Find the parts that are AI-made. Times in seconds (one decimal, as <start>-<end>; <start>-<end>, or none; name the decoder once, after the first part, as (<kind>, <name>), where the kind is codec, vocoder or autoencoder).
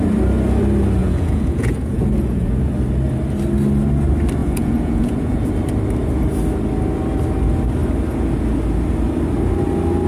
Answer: 1.0-2.7 (vocoder, Vocos); 4.4-5.5